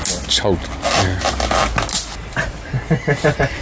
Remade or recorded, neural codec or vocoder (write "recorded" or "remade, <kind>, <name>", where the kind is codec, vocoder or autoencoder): recorded